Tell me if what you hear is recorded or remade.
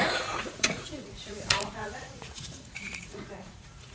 remade